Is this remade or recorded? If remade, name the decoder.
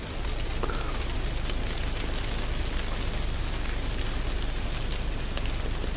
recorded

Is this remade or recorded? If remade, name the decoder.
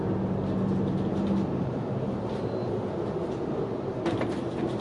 recorded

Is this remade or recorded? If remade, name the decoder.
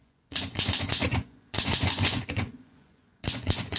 remade, vocoder, Vocos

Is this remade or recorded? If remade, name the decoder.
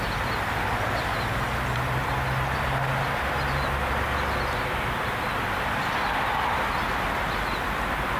recorded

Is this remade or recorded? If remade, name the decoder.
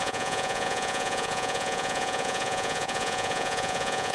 remade, vocoder, Vocos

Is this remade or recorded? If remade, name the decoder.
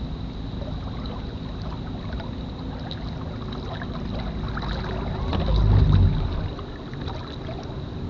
recorded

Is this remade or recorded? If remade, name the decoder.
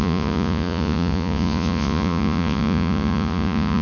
remade, vocoder, Vocos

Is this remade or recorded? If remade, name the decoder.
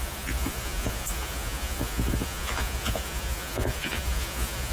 remade, vocoder, Vocos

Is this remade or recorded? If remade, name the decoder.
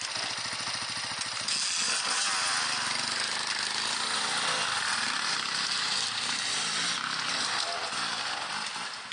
recorded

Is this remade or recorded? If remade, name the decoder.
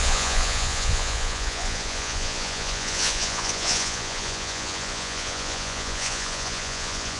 remade, vocoder, Vocos